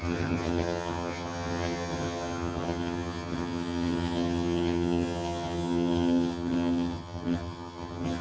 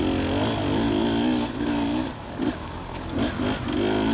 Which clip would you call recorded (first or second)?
second